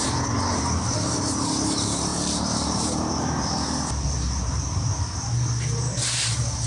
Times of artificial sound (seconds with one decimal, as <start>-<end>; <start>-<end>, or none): 0.0-6.7